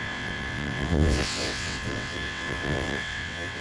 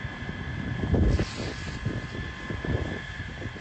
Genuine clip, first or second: second